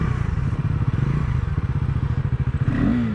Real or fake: real